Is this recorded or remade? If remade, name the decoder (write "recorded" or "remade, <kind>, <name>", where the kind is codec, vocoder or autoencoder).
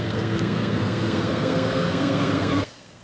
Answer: remade, codec, SNAC